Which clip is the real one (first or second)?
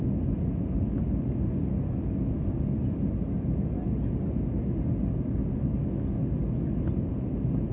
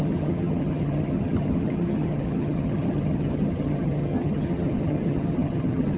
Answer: first